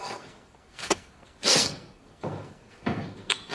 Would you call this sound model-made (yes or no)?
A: yes